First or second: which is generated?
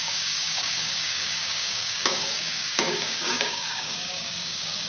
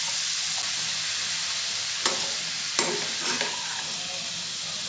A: first